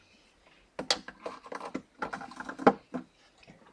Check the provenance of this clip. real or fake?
real